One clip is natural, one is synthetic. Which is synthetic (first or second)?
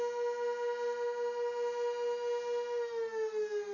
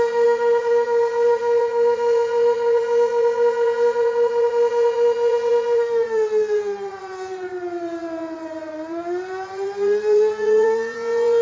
second